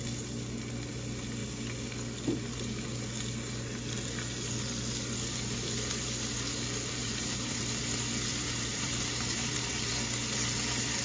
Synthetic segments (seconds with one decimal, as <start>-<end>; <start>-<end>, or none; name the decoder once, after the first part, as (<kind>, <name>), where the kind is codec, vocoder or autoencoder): 7.0-7.6 (vocoder, BigVGAN v2); 8.3-9.9